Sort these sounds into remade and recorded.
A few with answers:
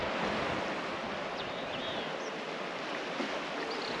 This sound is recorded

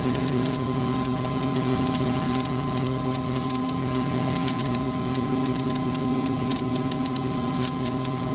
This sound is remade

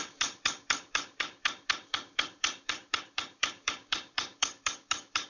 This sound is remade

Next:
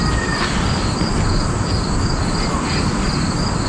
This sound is recorded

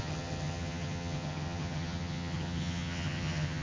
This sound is remade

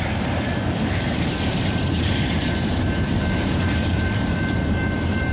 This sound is remade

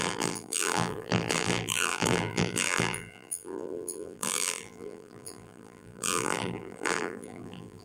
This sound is remade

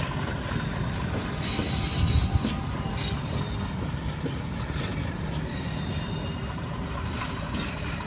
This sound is recorded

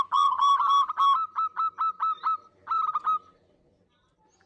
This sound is recorded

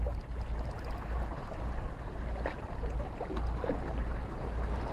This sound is recorded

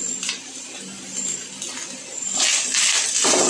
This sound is recorded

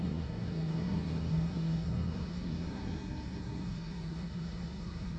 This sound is remade